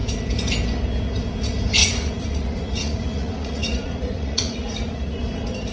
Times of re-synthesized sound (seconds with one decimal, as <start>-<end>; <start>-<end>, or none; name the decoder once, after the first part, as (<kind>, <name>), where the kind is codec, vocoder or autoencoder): 1.8-5.2 (vocoder, Vocos)